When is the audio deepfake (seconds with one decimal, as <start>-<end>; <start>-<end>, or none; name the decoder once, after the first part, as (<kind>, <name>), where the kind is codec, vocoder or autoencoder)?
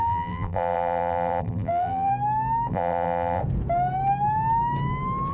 0.0-2.1 (vocoder, BigVGAN v2); 2.7-3.4